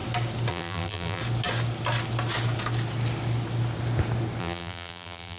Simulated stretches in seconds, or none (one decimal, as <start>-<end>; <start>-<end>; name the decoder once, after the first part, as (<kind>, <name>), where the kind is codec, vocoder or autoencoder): 0.5-1.2 (vocoder, BigVGAN v2); 4.4-5.4